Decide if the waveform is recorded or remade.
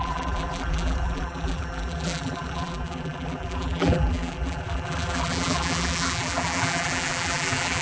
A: remade